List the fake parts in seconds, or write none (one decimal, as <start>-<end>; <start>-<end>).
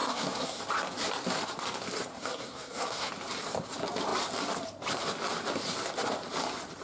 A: 0.0-0.6; 2.1-3.1